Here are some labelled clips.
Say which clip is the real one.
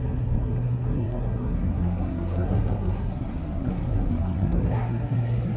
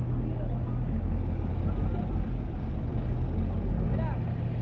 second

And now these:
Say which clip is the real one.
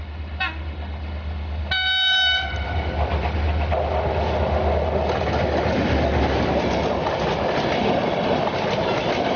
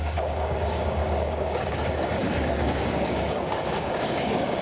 first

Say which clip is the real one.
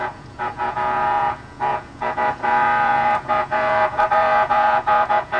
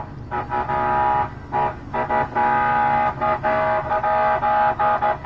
second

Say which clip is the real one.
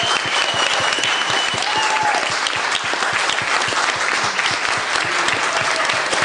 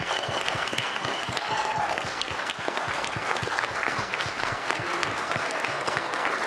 first